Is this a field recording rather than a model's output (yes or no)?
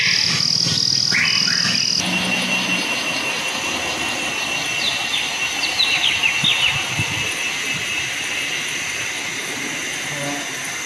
yes